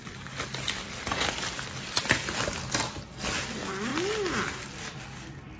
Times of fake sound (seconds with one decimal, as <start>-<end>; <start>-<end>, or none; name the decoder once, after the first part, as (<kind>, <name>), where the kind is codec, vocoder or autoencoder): none